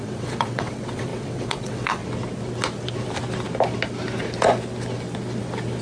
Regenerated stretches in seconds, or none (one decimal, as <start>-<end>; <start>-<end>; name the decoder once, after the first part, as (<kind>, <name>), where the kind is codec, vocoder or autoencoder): 0.0-2.0 (vocoder, WaveNeXt)